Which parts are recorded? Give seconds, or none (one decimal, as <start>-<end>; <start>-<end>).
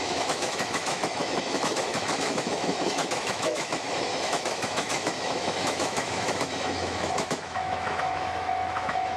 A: none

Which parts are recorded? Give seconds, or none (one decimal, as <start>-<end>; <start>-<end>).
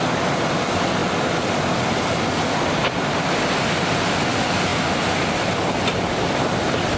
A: 0.0-7.0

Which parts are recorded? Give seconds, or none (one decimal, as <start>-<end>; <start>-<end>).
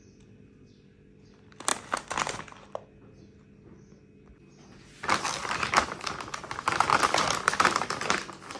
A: 0.0-8.6